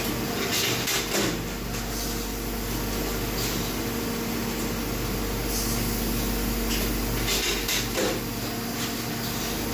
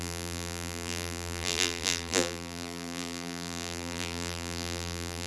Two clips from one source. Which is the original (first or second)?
first